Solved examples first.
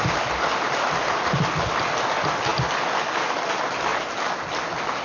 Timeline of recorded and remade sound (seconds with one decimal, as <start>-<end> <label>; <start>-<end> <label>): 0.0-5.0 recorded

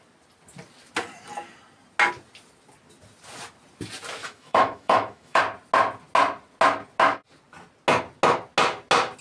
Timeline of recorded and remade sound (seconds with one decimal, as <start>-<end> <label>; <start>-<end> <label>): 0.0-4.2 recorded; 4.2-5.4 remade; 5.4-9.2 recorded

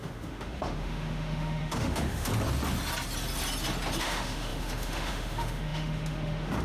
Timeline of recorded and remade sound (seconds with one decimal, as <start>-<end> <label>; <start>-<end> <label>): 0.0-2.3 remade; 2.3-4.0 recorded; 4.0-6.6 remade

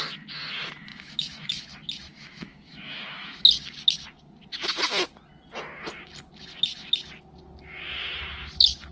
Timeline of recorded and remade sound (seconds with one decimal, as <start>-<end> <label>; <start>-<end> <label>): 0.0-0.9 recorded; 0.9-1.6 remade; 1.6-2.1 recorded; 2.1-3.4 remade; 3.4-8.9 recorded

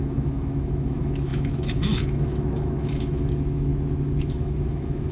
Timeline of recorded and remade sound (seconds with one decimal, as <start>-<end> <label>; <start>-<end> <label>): 0.0-3.7 remade; 3.7-4.2 recorded; 4.2-5.1 remade

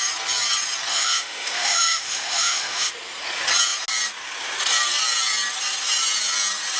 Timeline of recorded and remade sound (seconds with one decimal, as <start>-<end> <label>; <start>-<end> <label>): 0.0-0.9 recorded; 0.9-2.9 remade; 2.9-6.8 recorded

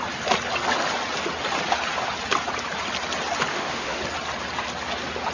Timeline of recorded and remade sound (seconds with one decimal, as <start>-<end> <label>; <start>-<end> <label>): 0.0-3.5 recorded; 3.5-4.0 remade; 4.0-5.3 recorded

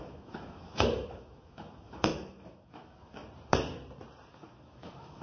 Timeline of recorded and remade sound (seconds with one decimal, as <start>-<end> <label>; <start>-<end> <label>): 0.0-3.2 remade; 3.2-4.3 recorded; 4.3-5.2 remade